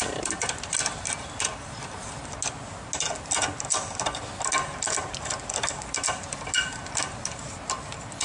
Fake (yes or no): no